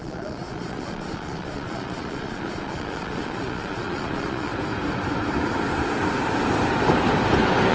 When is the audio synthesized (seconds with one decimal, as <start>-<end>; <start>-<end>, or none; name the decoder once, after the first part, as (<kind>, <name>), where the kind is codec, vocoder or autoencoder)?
0.0-4.5 (vocoder, Vocos)